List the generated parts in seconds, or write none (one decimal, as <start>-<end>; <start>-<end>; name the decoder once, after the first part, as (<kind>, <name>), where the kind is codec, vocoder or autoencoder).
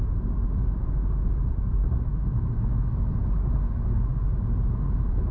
2.1-3.5 (autoencoder, DAC-VAE)